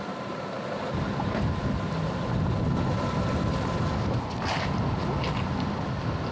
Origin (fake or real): real